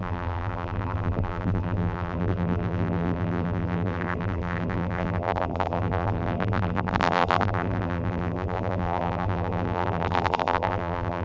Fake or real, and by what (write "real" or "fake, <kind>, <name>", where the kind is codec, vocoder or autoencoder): fake, vocoder, BigVGAN v2